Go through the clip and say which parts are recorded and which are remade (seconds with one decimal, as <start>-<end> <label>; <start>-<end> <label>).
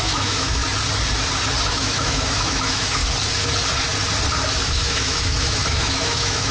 0.0-0.6 remade; 0.6-1.7 recorded; 1.7-3.0 remade; 3.0-4.7 recorded; 4.7-6.5 remade